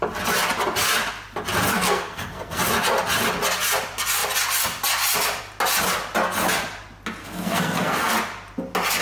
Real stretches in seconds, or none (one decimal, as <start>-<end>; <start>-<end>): 0.0-1.7; 2.6-7.2; 8.1-9.0